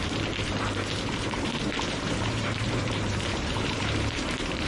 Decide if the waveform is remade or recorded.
remade